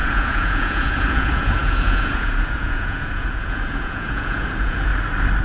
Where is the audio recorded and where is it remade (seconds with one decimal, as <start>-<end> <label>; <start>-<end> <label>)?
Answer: 0.0-4.9 remade; 4.9-5.4 recorded

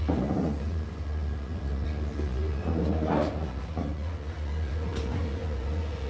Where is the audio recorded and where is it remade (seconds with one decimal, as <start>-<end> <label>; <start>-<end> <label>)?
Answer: 0.0-6.1 remade